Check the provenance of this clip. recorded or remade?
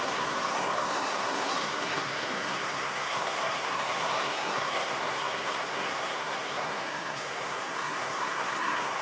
remade